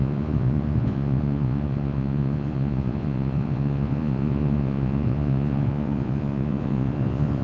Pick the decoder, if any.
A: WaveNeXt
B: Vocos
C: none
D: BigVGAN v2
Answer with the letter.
B